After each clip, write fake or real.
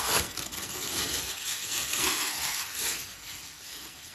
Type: fake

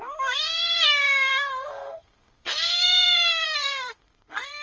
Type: fake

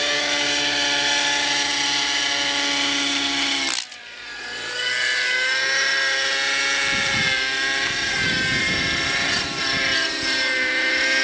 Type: real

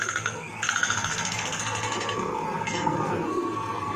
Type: fake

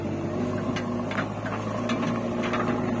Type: real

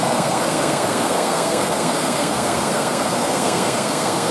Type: fake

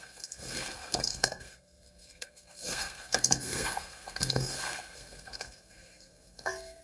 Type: fake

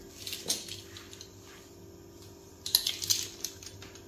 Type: real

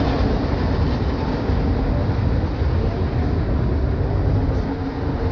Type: real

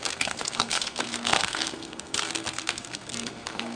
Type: fake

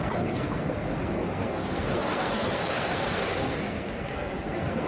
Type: fake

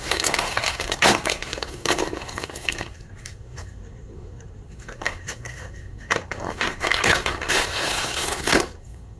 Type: fake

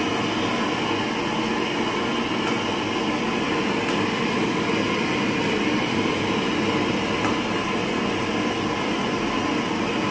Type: real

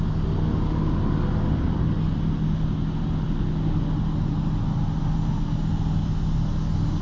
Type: real